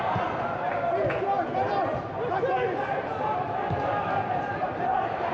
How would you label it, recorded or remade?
remade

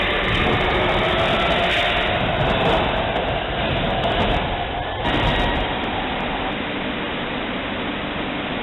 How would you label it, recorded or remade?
recorded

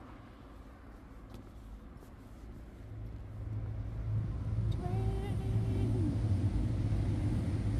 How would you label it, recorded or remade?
recorded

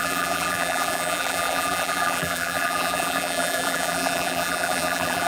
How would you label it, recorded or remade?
remade